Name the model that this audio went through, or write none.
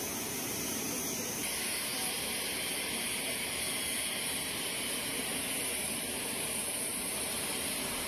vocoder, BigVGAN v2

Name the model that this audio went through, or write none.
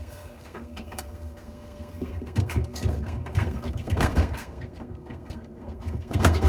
codec, SNAC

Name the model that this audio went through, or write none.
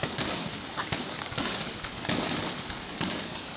codec, DAC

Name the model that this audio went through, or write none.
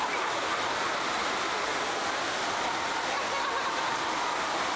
none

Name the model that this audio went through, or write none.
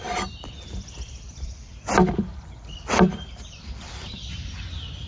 vocoder, BigVGAN v2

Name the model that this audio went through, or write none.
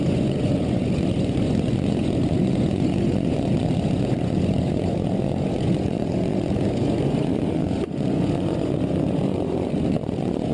vocoder, Vocos